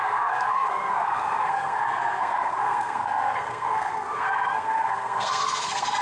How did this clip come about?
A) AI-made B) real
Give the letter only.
A